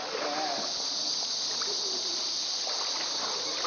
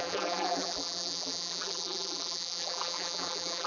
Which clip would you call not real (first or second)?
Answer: second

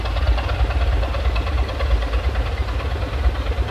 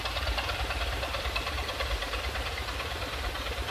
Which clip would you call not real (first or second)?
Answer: second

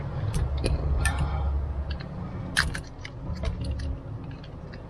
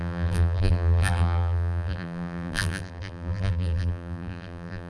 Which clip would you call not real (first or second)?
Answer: second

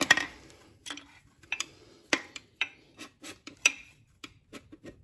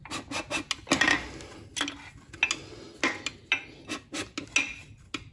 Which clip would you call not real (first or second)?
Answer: first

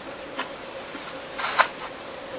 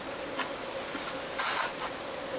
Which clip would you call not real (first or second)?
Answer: first